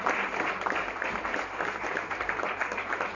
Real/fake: real